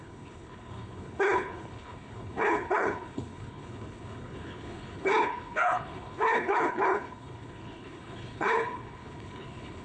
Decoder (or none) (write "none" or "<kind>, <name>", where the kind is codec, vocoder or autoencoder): codec, HILCodec